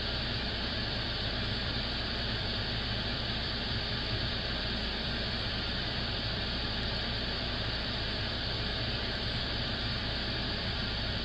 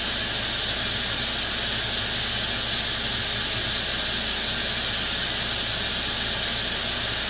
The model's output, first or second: first